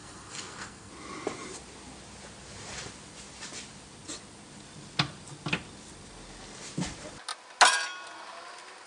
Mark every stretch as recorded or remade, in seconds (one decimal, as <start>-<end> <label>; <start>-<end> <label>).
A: 0.0-0.9 remade; 0.9-8.9 recorded